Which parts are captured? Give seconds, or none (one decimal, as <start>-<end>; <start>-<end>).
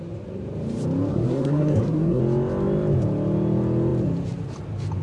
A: 0.0-1.1; 2.2-5.0